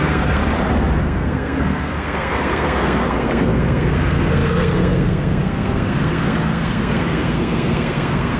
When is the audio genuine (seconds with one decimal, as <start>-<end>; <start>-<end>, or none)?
0.4-1.0